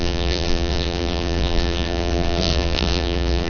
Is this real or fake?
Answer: fake